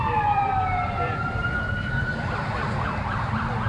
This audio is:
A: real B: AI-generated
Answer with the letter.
B